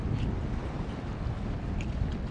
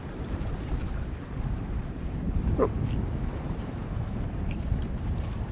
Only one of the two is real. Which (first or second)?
first